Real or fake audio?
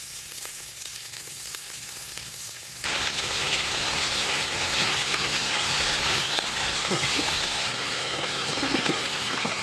fake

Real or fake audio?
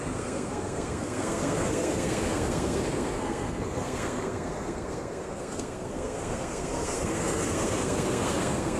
fake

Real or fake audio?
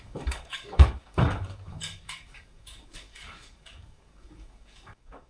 fake